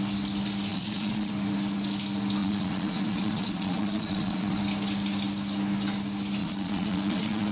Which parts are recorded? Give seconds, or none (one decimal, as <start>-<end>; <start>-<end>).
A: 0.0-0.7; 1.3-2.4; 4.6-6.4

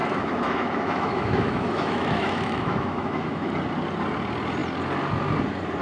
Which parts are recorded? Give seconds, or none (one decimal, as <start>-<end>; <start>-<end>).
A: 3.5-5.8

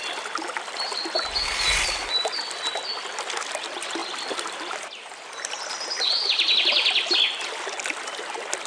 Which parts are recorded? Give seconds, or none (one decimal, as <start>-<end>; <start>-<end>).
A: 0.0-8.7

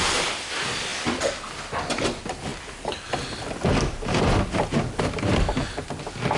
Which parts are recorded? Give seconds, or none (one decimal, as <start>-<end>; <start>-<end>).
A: 0.0-6.4

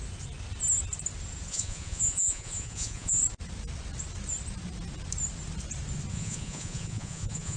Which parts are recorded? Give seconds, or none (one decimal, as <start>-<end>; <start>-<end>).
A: 0.0-1.5; 3.2-6.1

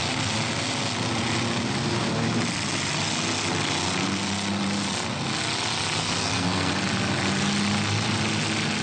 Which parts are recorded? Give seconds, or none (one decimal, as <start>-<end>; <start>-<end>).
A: 0.0-6.0; 6.7-8.8